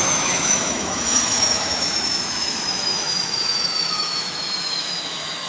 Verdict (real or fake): fake